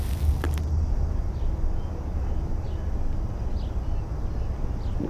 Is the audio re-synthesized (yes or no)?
no